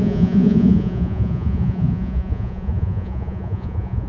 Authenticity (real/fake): fake